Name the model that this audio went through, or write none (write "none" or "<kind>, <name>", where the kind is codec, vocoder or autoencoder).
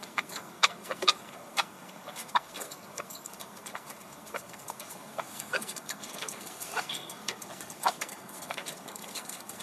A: codec, SNAC